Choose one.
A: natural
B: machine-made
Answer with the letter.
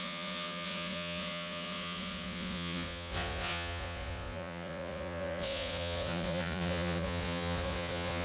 B